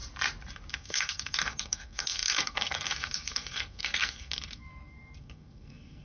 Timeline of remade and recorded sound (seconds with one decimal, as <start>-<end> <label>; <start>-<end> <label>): 0.0-0.7 recorded; 0.7-6.0 remade